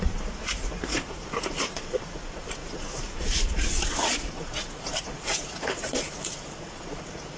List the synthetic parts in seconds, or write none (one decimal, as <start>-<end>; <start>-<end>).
0.0-7.4